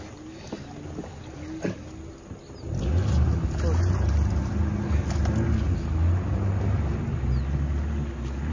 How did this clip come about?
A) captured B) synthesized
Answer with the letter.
A